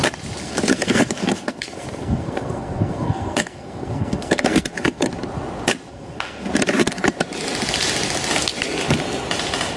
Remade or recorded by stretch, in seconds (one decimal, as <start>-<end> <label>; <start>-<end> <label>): 0.0-0.4 recorded; 0.4-5.1 remade; 5.1-5.9 recorded; 5.9-6.5 remade; 6.5-9.8 recorded